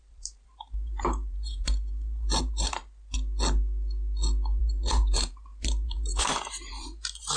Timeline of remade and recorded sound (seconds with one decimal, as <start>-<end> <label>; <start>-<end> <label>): 0.0-2.8 remade; 2.8-4.6 recorded; 4.6-7.4 remade